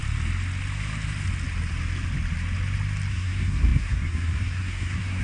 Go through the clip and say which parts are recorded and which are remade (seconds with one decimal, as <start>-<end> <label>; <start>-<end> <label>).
0.0-3.1 recorded; 3.1-5.2 remade